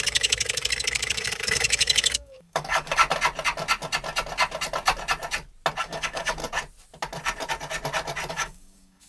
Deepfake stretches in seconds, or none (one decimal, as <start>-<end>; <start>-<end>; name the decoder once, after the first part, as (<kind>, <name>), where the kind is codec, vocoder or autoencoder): 0.0-3.0 (codec, DAC); 5.8-6.4; 8.3-9.1